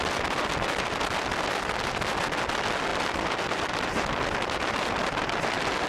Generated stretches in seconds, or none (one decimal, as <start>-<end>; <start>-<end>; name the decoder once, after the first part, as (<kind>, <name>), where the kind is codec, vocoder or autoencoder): none